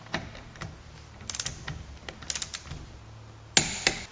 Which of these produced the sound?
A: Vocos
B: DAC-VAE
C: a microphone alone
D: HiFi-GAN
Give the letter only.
C